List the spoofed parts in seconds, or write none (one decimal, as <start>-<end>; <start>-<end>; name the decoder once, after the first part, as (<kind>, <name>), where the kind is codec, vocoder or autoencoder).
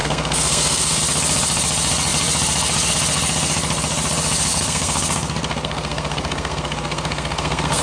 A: 0.0-1.0 (codec, SNAC); 4.5-7.8